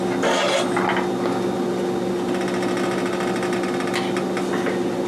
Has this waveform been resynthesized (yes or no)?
no